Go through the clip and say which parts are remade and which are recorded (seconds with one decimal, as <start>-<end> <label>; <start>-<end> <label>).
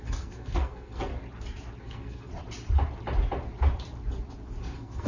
0.0-1.1 remade; 1.1-1.8 recorded; 1.8-2.3 remade; 2.3-4.6 recorded; 4.6-5.1 remade